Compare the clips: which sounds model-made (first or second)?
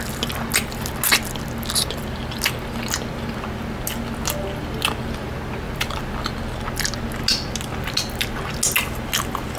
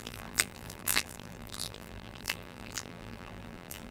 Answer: second